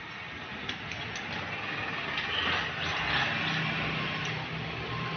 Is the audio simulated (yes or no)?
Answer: no